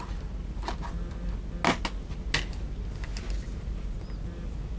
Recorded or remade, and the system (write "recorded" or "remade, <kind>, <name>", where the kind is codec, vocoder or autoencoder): recorded